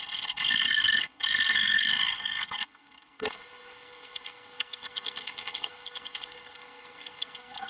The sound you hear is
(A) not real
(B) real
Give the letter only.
A